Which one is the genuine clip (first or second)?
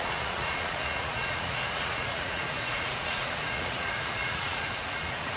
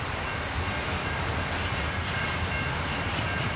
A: second